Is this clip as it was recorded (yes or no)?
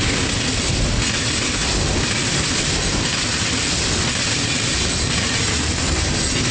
yes